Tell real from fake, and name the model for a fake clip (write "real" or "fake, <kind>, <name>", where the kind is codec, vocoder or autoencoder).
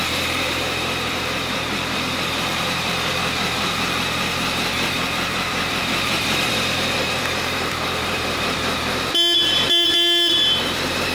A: fake, vocoder, BigVGAN v2